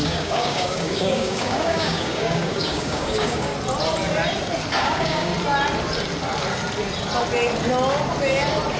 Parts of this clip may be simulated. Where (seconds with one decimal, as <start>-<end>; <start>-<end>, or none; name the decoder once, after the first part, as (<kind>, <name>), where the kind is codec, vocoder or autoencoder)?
0.0-3.5 (codec, DAC); 4.8-5.3